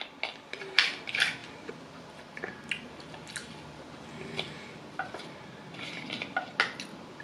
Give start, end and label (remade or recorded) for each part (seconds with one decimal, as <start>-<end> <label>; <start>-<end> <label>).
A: 0.0-7.2 recorded